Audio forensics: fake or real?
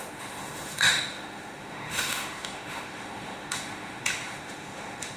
fake